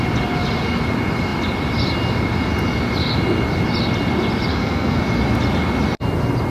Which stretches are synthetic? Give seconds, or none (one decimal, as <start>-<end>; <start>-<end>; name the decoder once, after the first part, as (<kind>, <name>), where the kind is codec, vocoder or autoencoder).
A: 4.5-5.0 (codec, SNAC)